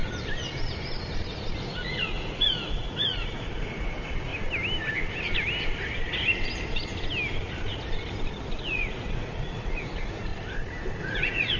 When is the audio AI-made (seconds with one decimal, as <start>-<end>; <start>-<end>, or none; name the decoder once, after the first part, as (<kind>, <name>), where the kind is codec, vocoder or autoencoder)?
1.6-4.3 (vocoder, Vocos); 8.6-10.3; 11.0-11.6